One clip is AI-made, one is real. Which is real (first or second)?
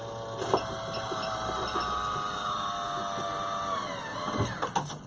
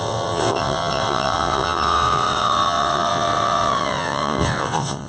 first